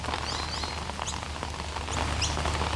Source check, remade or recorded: recorded